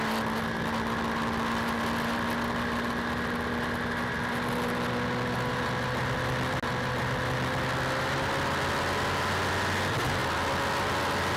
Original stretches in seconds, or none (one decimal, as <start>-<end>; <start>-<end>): 0.0-11.4

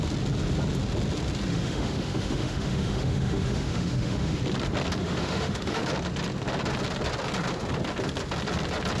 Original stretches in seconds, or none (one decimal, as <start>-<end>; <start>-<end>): 0.0-1.5; 4.4-5.0; 5.9-9.0

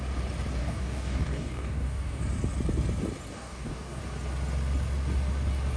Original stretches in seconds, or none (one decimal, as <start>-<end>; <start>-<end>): 0.0-0.6; 2.2-3.3; 4.0-5.8

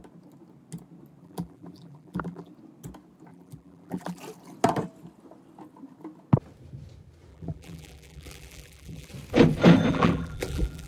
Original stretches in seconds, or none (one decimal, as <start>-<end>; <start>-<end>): 0.0-1.2; 2.5-3.3; 4.2-7.3; 9.1-9.9

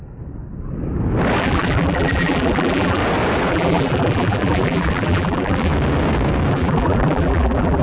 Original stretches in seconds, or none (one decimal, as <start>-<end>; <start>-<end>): 0.0-1.4; 3.0-3.5; 5.7-6.5

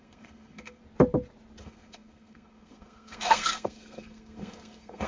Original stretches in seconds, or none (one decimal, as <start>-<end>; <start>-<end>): 0.8-1.6

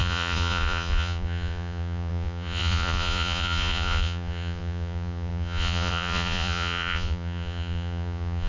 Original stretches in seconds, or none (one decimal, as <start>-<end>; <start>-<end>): none